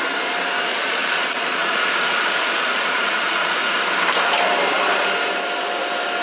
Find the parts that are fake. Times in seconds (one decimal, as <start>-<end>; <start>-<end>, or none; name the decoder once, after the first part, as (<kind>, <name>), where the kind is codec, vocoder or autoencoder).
0.7-3.8 (vocoder, Vocos)